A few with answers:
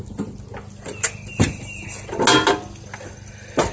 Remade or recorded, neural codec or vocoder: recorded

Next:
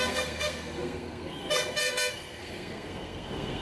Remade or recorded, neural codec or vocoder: remade, codec, SNAC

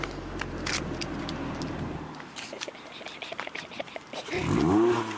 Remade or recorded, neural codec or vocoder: recorded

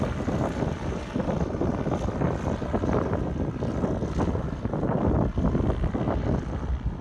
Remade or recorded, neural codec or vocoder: recorded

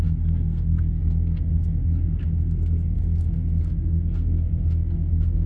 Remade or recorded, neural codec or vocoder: remade, codec, SNAC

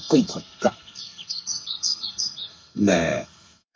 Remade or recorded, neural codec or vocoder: remade, codec, SNAC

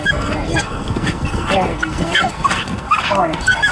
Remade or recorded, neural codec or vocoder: remade, codec, SNAC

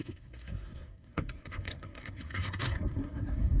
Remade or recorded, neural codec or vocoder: remade, codec, SNAC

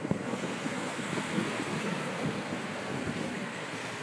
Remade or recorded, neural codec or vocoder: remade, codec, SNAC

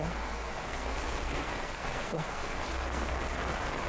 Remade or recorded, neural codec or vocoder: remade, codec, SNAC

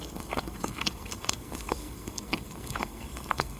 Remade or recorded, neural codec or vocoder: remade, codec, SNAC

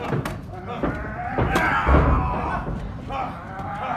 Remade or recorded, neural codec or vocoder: recorded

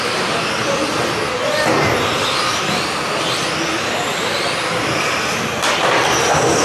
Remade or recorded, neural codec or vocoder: recorded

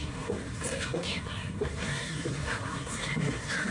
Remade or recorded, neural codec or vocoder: remade, codec, SNAC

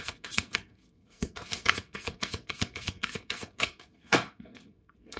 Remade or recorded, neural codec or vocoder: remade, codec, SNAC